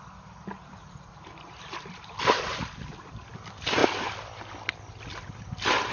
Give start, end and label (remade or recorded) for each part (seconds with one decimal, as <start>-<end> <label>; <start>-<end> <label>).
0.0-5.9 recorded